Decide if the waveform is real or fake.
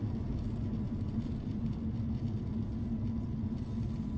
real